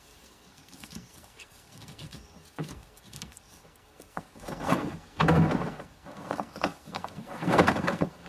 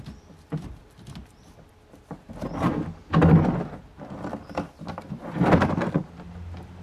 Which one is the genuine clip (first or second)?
second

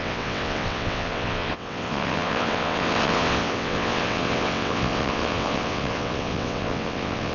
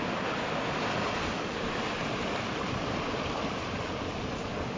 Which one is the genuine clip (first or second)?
second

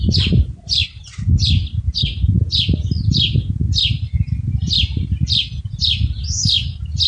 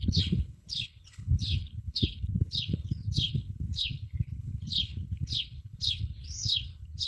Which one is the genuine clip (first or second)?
first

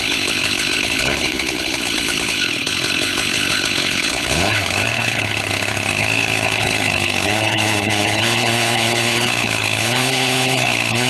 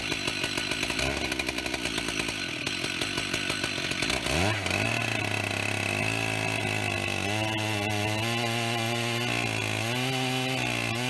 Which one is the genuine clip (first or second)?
second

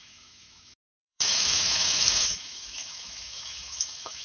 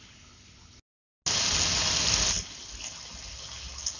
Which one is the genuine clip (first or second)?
second